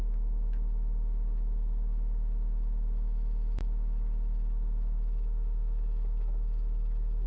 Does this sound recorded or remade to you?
remade